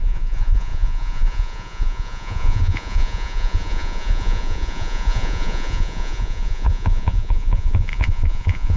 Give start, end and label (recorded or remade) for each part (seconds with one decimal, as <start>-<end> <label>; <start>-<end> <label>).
0.0-8.8 remade